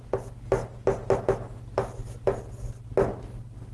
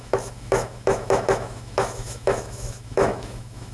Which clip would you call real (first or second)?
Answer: first